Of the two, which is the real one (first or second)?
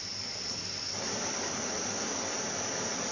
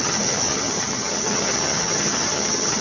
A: first